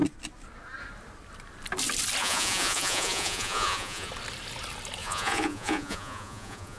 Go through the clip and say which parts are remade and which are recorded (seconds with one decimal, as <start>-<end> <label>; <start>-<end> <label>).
0.0-2.2 recorded; 2.2-4.1 remade; 4.1-5.0 recorded; 5.0-6.8 remade